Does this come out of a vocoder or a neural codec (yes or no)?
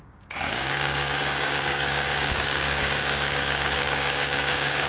yes